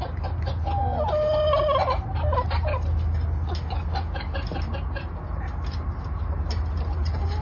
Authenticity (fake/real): real